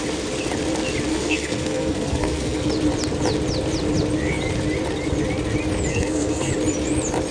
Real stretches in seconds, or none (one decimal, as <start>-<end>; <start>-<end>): 0.0-1.1; 2.7-5.9; 6.5-7.3